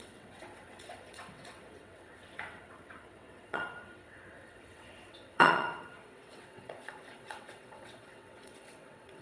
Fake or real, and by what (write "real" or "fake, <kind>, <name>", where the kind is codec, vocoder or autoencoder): fake, vocoder, WaveNeXt